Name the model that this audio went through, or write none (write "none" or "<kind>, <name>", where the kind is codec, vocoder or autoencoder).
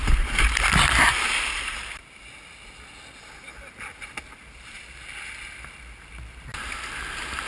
none